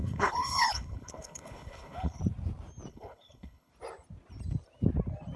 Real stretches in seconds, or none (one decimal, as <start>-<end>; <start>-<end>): 2.2-2.9; 3.7-5.4